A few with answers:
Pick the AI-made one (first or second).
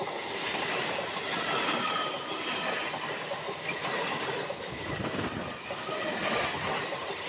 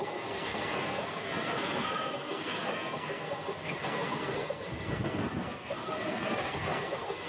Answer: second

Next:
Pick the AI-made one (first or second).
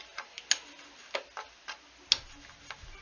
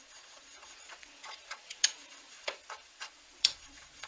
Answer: second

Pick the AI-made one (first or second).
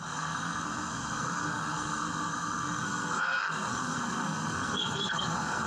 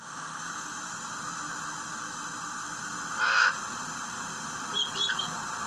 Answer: first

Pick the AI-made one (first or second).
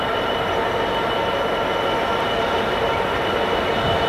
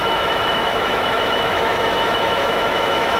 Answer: second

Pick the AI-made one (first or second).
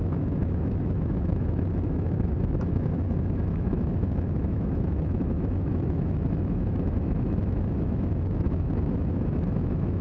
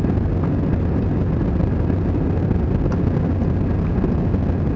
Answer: first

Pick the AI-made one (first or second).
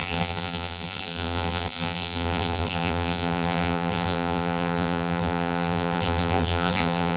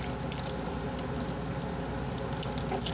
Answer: first